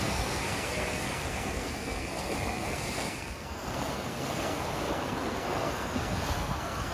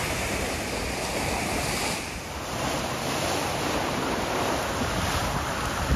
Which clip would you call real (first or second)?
second